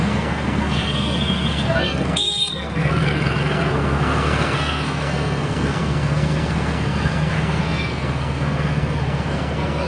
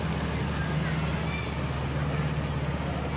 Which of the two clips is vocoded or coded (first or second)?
first